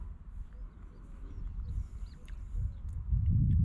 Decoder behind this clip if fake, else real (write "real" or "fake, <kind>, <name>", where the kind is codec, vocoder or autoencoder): real